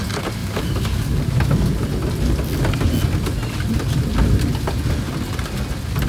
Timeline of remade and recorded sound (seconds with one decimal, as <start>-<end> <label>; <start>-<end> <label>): 0.0-0.4 recorded; 0.4-1.2 remade; 1.2-6.1 recorded